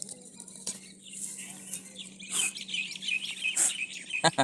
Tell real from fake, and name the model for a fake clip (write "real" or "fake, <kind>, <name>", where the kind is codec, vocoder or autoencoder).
real